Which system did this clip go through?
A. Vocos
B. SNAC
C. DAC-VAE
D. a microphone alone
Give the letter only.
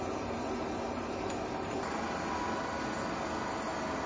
D